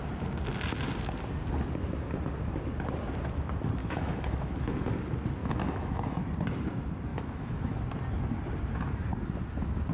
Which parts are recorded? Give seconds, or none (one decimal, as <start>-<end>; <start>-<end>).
0.0-3.8; 4.9-5.4; 6.2-7.1; 7.8-9.9